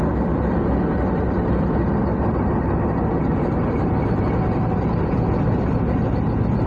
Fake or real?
real